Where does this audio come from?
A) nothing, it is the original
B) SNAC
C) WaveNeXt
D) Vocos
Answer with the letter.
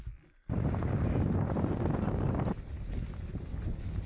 A